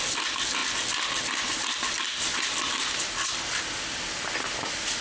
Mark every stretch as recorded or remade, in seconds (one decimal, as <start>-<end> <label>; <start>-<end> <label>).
0.0-5.0 recorded